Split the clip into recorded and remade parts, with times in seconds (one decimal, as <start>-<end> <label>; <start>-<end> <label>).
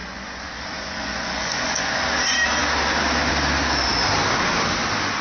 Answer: 0.0-2.0 remade; 2.0-5.2 recorded